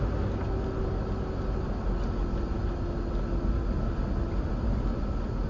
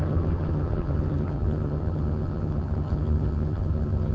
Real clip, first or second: first